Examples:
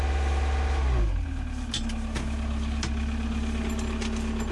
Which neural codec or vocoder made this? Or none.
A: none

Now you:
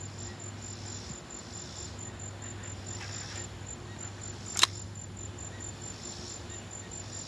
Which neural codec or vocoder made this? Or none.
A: none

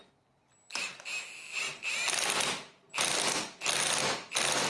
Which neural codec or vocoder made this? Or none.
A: none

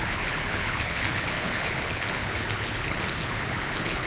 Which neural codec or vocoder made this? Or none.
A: codec, HILCodec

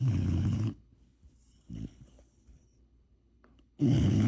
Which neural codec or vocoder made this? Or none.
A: codec, HILCodec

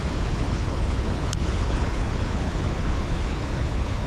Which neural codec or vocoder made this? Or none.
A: codec, HILCodec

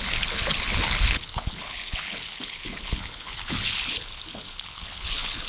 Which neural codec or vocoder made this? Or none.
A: codec, HILCodec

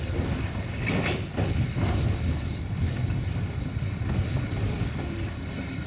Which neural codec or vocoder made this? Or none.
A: none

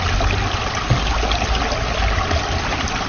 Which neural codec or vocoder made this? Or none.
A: none